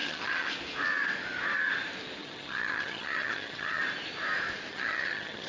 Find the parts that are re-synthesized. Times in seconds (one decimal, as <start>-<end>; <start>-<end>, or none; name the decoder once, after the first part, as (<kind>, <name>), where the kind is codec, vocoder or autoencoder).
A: 0.0-0.5 (vocoder, HiFi-GAN); 2.2-3.8; 4.7-5.5